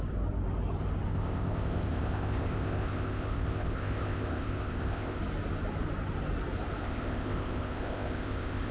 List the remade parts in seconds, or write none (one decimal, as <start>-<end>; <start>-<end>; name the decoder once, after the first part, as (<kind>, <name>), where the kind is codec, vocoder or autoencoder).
1.1-5.2 (codec, ZipCodec); 6.8-8.7